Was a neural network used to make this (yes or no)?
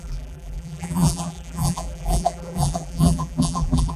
yes